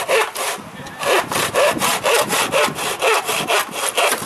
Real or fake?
real